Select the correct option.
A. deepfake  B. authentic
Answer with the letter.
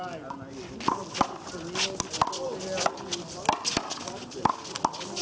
B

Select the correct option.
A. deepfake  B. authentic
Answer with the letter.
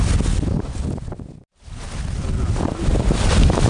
B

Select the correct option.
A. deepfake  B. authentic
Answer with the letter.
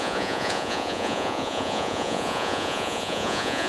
A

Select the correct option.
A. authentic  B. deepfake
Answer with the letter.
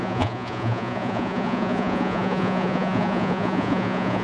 B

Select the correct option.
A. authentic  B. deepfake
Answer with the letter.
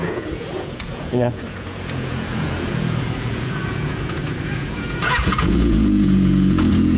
B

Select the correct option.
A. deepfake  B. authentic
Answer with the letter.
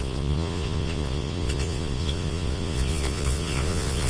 A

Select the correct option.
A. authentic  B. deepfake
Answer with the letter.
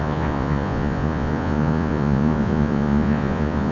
B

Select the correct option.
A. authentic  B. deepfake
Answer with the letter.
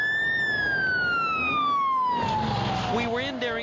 A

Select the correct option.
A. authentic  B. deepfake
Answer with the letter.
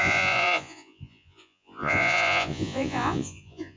B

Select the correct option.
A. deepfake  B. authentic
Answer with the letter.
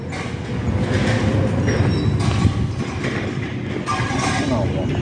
B